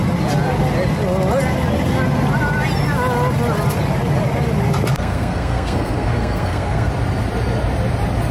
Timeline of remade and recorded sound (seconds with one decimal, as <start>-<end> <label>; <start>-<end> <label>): 0.0-4.9 recorded; 4.9-6.9 remade; 6.9-8.3 recorded